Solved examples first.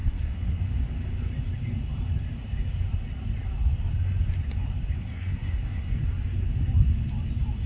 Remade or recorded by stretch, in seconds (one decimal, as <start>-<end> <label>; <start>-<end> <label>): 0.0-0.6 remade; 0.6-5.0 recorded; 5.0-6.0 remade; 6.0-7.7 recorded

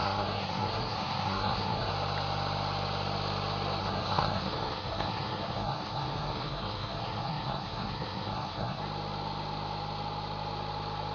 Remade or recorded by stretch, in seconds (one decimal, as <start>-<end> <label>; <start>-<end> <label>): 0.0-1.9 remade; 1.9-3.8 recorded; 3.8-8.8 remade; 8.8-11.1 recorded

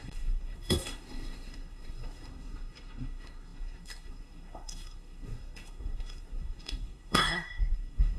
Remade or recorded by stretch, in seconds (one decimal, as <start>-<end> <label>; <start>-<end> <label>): 0.0-8.2 remade